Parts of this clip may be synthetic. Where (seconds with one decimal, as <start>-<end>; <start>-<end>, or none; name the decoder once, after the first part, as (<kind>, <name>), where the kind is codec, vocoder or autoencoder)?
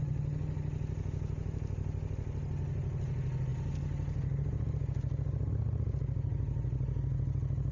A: none